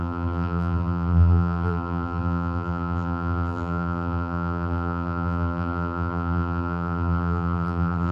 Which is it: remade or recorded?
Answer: remade